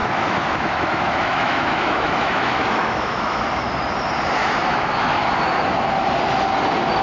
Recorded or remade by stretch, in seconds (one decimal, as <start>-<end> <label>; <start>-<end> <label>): 0.0-3.4 remade; 3.4-4.4 recorded; 4.4-5.2 remade; 5.2-7.0 recorded